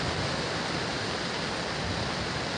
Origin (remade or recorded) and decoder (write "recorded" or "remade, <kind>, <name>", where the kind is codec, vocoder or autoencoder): recorded